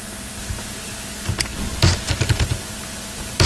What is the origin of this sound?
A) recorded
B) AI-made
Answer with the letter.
A